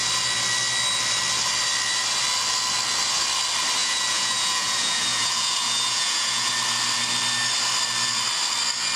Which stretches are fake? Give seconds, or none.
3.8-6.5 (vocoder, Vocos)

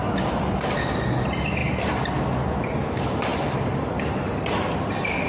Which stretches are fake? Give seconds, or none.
none

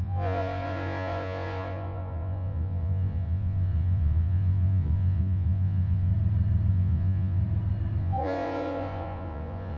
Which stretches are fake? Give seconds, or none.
0.0-6.1 (vocoder, Vocos); 6.7-7.4; 8.0-9.8

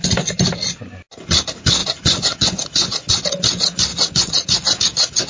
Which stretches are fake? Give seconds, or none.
1.8-3.1 (vocoder, Vocos); 3.9-4.8